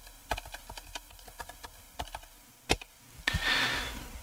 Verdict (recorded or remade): recorded